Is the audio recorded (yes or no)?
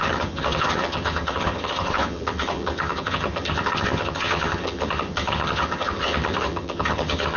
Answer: no